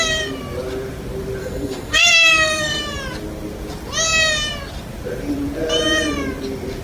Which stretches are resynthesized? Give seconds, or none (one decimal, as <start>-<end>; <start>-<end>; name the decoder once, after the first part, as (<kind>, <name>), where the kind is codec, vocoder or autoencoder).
1.4-2.8 (codec, SNAC)